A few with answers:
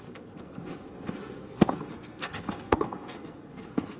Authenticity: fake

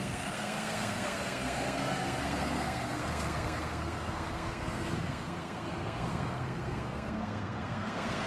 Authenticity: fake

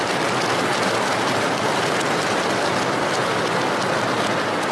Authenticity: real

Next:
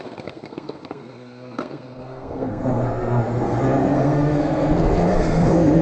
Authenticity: fake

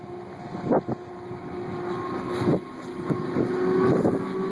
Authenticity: real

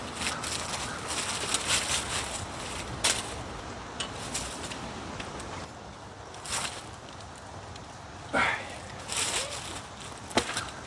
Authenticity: real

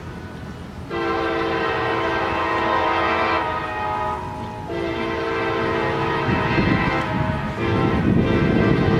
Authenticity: real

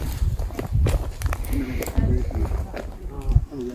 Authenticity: real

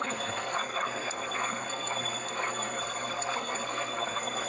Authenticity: fake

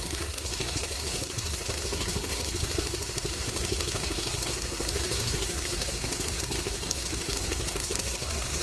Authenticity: fake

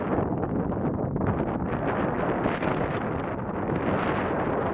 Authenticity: real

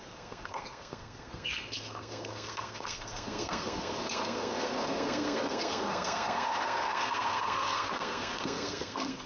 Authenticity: fake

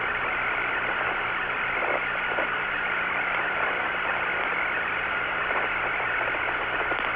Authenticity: real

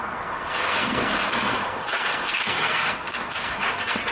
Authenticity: fake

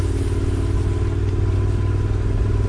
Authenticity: real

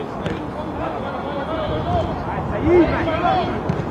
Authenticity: real